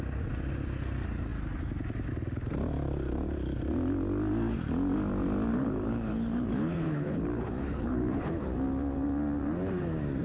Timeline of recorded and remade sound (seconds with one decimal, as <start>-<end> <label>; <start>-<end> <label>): 0.0-5.5 recorded; 5.5-8.5 remade; 8.5-10.2 recorded